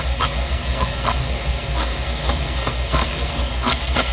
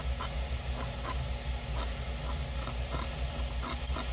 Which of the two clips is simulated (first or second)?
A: first